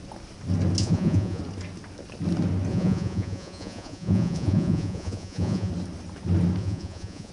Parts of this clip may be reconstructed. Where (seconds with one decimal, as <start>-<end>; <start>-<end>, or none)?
0.8-1.4; 2.7-5.7; 6.6-7.3